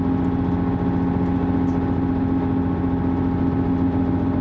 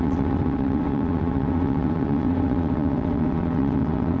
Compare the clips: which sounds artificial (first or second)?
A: second